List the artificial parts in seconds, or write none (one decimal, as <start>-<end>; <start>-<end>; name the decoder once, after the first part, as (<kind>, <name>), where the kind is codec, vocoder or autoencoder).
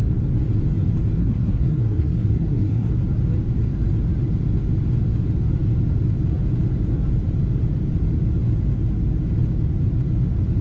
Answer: 1.2-2.9 (codec, SNAC)